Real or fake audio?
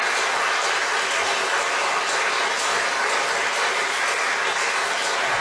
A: real